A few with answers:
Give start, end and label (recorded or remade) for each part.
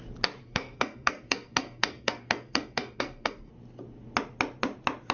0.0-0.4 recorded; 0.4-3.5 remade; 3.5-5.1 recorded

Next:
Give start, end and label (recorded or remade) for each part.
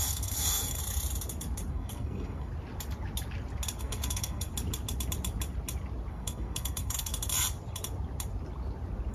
0.0-0.8 remade; 0.8-1.7 recorded; 1.7-2.5 remade; 2.5-3.8 recorded; 3.8-4.5 remade; 4.5-6.1 recorded; 6.1-7.1 remade; 7.1-9.1 recorded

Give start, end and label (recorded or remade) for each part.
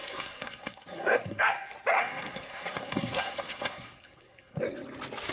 0.0-1.5 remade; 1.5-1.9 recorded; 1.9-4.6 remade; 4.6-5.3 recorded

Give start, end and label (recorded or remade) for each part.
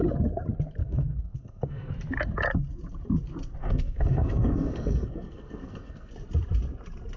0.0-0.8 recorded; 0.8-1.9 remade; 1.9-3.6 recorded; 3.6-6.1 remade; 6.1-7.2 recorded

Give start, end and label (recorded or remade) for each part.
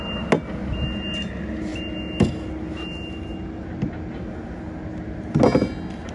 0.0-6.1 recorded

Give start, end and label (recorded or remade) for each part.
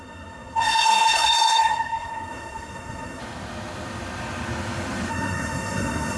0.0-3.2 remade; 3.2-5.1 recorded; 5.1-6.2 remade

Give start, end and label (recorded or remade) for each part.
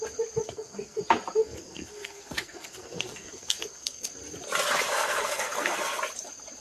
0.0-0.4 recorded; 0.4-1.0 remade; 1.0-1.4 recorded; 1.4-4.1 remade; 4.1-4.9 recorded; 4.9-6.0 remade; 6.0-6.6 recorded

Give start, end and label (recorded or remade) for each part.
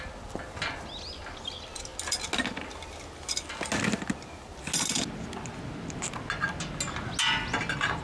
0.0-8.0 recorded